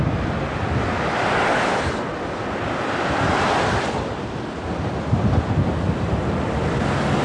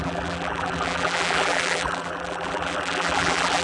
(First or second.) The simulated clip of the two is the second